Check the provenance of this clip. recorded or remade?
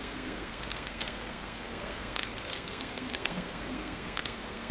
remade